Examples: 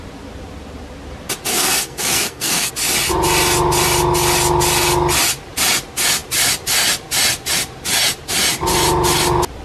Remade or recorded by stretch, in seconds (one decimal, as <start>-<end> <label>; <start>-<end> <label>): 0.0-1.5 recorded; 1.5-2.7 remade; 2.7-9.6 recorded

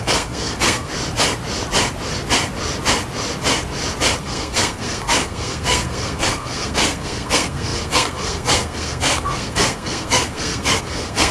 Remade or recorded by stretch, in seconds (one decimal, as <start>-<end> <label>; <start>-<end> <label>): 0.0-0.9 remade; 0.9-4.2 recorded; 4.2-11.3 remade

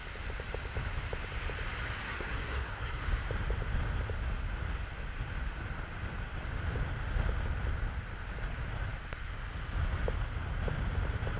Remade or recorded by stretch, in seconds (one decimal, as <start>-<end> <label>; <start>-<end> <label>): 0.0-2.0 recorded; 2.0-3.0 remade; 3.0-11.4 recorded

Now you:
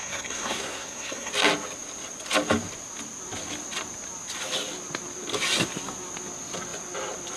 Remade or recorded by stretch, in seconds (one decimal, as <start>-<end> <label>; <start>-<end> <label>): 0.0-1.3 remade; 1.3-7.4 recorded

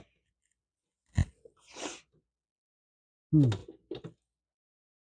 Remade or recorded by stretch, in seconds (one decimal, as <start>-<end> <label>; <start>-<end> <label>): 0.0-5.1 recorded

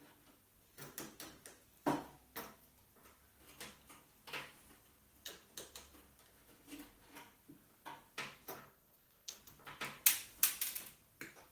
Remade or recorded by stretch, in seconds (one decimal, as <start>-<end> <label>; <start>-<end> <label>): 0.0-8.6 recorded; 8.6-9.4 remade; 9.4-11.5 recorded

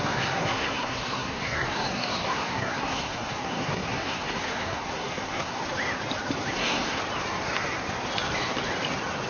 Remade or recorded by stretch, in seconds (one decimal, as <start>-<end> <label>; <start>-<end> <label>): 0.0-5.6 remade; 5.6-6.5 recorded; 6.5-7.0 remade; 7.0-9.3 recorded

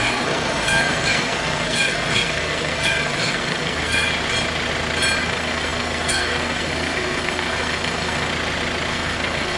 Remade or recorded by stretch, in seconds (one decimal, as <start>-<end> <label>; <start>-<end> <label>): 0.0-4.1 remade; 4.1-5.2 recorded; 5.2-8.3 remade; 8.3-8.9 recorded; 8.9-9.6 remade